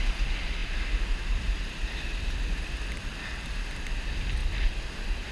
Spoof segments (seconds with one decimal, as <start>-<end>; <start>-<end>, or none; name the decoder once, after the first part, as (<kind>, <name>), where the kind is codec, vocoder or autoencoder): none